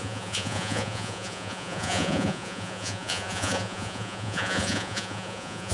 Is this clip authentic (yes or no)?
no